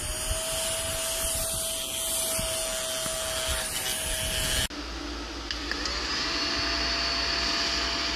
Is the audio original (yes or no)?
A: yes